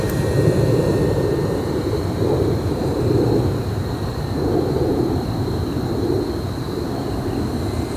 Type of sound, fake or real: fake